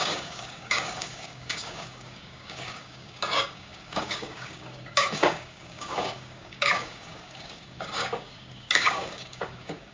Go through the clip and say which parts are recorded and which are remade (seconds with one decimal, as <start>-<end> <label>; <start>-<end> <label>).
0.0-9.9 remade

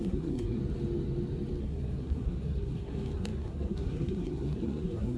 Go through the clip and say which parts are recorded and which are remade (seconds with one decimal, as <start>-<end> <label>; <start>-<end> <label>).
0.0-0.6 remade; 0.6-1.6 recorded; 1.6-5.2 remade

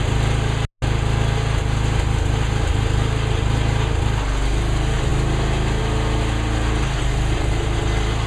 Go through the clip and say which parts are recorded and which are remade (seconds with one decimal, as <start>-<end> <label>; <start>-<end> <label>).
0.0-8.3 recorded

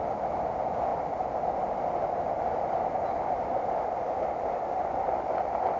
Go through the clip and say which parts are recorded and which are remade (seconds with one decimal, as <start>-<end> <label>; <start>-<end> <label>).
0.0-5.8 recorded

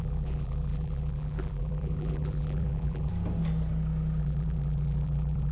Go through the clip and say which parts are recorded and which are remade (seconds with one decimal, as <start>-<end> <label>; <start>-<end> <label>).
0.0-3.1 remade; 3.1-4.2 recorded; 4.2-5.5 remade